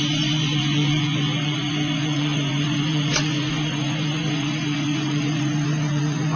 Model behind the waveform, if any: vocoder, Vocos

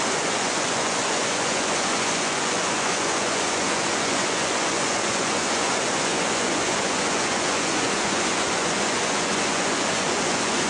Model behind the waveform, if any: vocoder, Vocos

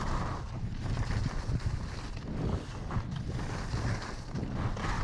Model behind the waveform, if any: none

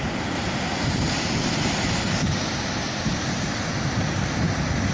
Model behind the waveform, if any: none